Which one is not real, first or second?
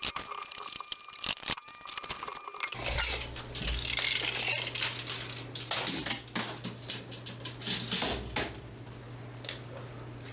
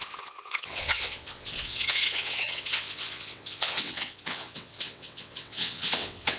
second